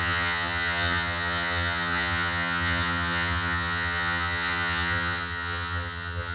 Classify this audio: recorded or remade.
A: remade